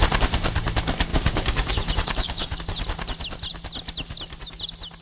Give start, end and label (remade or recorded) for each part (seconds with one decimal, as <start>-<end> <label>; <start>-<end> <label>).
0.0-1.1 recorded; 1.1-2.6 remade; 2.6-5.0 recorded